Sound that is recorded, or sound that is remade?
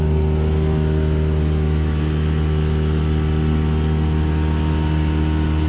recorded